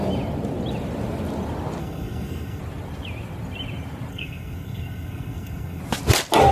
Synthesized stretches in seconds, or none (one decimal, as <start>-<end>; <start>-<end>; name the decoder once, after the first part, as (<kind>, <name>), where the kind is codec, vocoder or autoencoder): 1.8-2.6 (codec, SNAC); 4.1-5.8